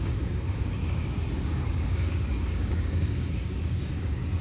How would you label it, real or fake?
fake